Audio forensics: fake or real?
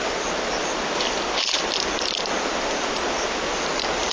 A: real